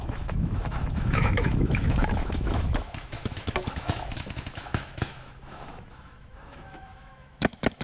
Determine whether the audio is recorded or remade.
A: remade